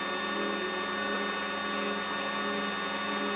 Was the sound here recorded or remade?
recorded